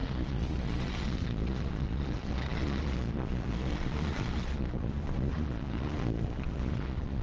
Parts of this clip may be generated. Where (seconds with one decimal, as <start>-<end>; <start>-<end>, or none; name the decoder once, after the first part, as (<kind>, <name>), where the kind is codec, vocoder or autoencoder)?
0.0-7.2 (vocoder, Vocos)